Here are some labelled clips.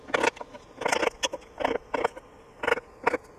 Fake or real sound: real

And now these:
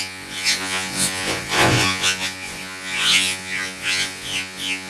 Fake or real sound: fake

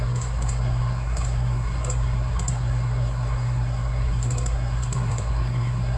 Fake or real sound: fake